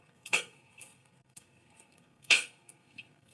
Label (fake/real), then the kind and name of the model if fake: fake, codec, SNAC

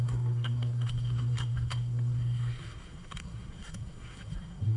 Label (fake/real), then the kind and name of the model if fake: fake, codec, SNAC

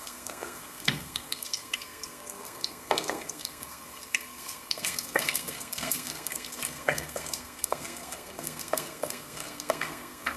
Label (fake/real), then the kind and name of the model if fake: fake, codec, SNAC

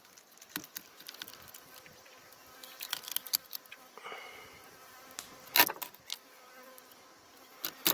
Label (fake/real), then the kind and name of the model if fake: real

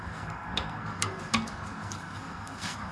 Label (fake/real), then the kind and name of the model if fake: fake, codec, SNAC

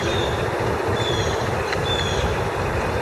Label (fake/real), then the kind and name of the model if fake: real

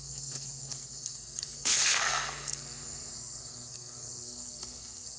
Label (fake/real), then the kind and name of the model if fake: fake, codec, SNAC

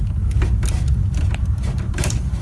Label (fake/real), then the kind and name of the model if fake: real